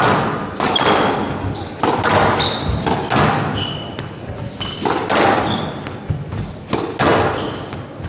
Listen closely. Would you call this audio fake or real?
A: real